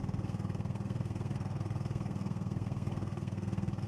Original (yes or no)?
no